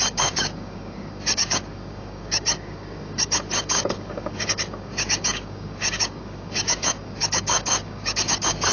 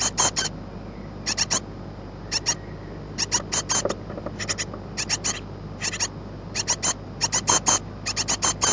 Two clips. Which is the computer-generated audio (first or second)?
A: first